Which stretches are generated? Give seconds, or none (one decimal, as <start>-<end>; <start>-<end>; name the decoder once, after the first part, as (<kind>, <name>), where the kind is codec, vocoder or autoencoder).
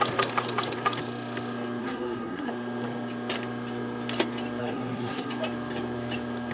1.8-2.5 (codec, SNAC); 4.6-5.3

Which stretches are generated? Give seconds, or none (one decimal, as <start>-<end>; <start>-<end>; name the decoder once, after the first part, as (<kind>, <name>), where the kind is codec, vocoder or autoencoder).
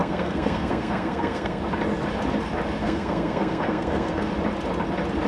0.0-1.6 (codec, SNAC); 2.8-4.3